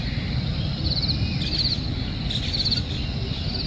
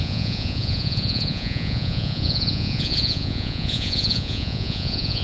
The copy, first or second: second